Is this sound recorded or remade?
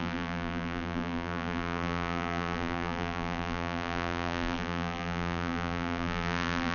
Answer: remade